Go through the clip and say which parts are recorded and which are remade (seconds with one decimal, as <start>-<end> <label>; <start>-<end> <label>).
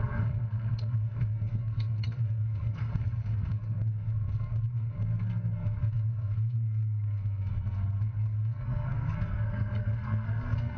0.0-10.8 remade